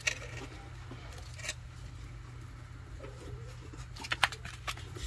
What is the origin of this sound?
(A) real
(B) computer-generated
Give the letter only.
A